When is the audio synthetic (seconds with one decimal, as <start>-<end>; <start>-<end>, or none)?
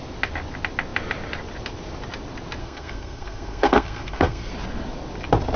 2.6-4.5